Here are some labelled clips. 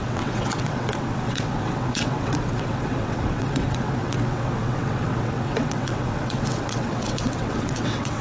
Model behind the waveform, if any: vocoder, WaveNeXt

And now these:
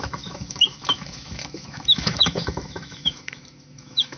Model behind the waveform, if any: autoencoder, DAC-VAE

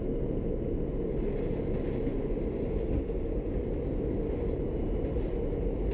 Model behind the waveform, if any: none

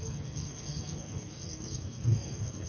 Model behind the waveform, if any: codec, SNAC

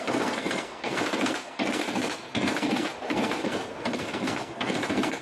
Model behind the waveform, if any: codec, SNAC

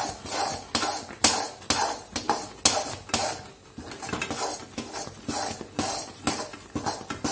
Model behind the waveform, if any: none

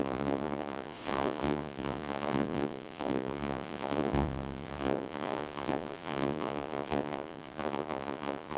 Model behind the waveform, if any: vocoder, Vocos